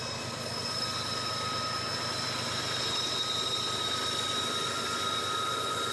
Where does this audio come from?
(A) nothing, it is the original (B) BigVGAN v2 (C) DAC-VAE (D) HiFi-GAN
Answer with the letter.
A